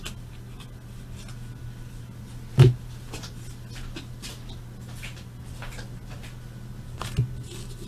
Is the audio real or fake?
real